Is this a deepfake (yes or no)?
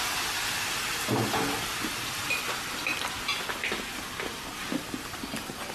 no